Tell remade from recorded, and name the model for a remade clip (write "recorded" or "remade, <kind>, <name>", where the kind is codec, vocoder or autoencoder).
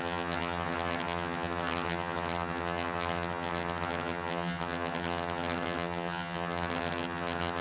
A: remade, vocoder, HiFi-GAN